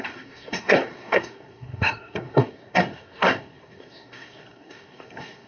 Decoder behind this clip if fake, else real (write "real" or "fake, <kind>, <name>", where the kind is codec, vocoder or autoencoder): fake, codec, SNAC